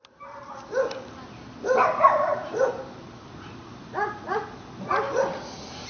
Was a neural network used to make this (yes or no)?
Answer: no